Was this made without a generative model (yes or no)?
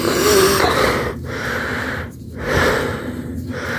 yes